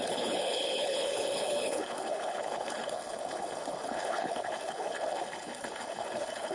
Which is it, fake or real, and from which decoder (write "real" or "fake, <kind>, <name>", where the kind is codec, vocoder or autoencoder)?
fake, codec, HILCodec